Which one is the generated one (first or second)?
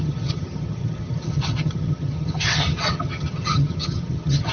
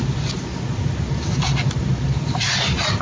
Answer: first